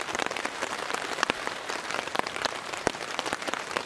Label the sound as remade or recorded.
remade